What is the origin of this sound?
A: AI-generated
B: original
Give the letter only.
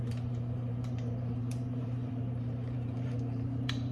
A